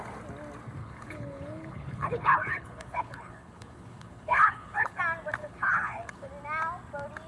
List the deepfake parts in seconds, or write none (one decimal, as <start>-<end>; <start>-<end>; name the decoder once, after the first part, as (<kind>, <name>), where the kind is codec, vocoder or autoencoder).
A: 0.8-5.0 (codec, HILCodec); 5.4-6.3